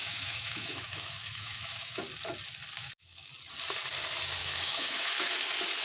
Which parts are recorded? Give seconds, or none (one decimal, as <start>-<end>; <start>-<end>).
2.0-2.8; 3.3-4.4; 5.1-5.8